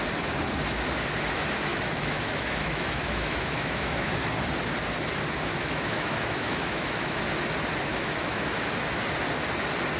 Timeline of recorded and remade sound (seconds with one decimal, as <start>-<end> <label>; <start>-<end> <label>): 0.0-1.7 recorded; 1.7-4.1 remade; 4.1-5.5 recorded; 5.5-7.2 remade; 7.2-7.9 recorded; 7.9-8.7 remade; 8.7-10.0 recorded

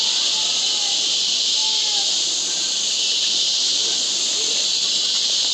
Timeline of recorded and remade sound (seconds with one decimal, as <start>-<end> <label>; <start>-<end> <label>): 0.0-5.5 recorded

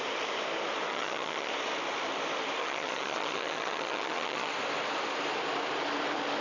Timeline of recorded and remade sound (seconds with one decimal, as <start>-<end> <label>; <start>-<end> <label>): 0.0-0.9 recorded; 0.9-1.5 remade; 1.5-2.6 recorded; 2.6-4.5 remade; 4.5-6.4 recorded

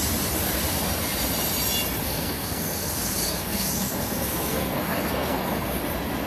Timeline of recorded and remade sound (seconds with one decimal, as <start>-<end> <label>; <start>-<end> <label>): 0.0-2.0 recorded; 2.0-5.8 remade; 5.8-6.3 recorded

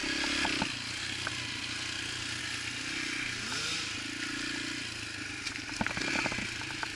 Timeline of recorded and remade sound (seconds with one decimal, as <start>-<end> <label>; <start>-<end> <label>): 0.0-7.0 recorded